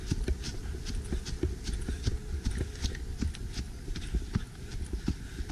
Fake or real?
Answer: real